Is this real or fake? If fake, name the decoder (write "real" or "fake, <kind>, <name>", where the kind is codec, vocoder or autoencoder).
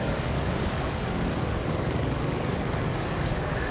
fake, codec, DAC